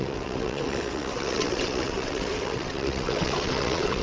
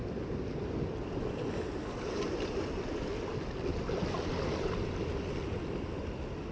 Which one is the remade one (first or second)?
first